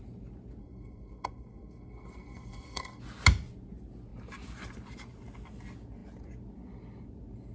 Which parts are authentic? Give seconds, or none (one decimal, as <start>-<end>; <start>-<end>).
0.0-0.6; 3.0-7.5